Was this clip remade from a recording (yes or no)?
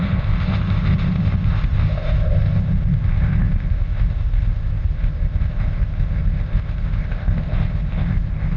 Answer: yes